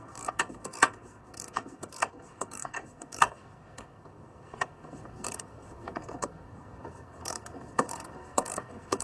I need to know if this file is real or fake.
fake